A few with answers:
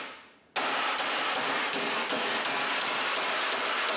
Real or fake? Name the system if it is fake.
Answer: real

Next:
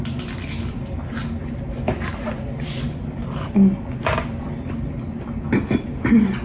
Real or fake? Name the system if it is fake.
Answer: real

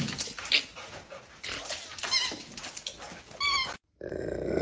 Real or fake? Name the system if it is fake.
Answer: real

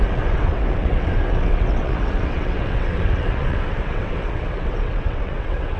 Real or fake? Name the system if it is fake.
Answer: fake, vocoder, WaveNeXt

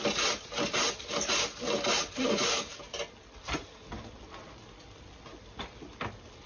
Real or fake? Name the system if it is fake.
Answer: real